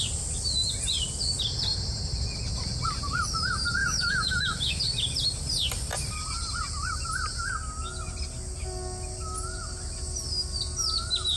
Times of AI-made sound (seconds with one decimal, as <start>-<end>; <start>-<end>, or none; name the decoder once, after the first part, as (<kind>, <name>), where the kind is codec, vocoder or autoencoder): 3.8-4.8 (autoencoder, DAC-VAE)